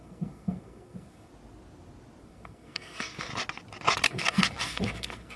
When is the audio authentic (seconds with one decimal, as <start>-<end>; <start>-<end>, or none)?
1.3-2.2; 3.3-4.1